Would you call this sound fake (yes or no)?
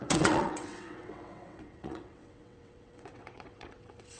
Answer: yes